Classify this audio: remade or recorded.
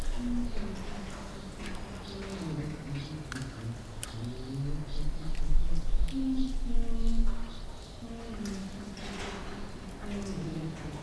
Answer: recorded